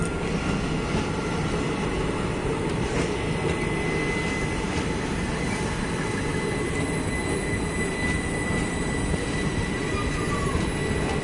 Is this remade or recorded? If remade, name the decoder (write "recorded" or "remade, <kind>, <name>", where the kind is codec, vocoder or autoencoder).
recorded